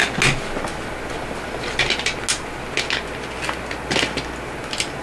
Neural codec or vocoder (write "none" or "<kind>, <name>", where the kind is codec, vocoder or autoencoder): none